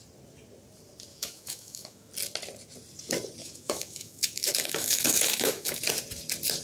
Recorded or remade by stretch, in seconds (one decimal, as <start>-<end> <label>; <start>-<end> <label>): 0.0-1.1 recorded; 1.1-2.1 remade; 2.1-3.4 recorded; 3.4-5.8 remade; 5.8-6.6 recorded